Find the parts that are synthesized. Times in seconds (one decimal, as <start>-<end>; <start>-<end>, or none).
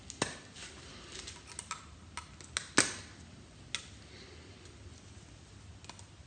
none